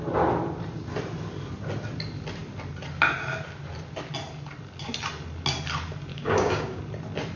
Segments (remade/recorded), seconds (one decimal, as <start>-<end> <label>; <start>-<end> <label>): 0.0-6.1 recorded; 6.1-6.8 remade; 6.8-7.4 recorded